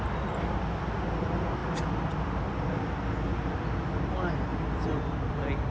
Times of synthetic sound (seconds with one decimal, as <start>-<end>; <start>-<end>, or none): none